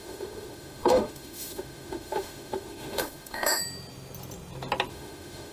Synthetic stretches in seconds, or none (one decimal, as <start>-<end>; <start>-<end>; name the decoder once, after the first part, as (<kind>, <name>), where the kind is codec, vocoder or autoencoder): 0.0-3.6 (autoencoder, DAC-VAE); 4.9-5.5